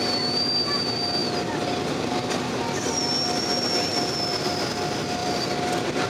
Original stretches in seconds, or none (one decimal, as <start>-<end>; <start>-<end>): 0.0-5.2